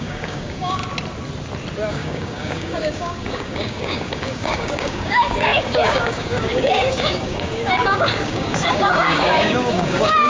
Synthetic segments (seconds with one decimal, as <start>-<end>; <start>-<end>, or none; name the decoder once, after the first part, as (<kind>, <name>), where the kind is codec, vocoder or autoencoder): 0.0-0.8 (codec, DAC); 1.9-10.3